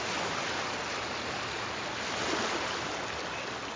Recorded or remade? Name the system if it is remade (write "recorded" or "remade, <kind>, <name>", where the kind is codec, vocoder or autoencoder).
recorded